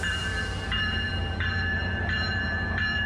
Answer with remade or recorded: remade